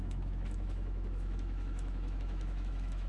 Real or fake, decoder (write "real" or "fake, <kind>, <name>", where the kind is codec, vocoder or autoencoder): fake, autoencoder, DAC-VAE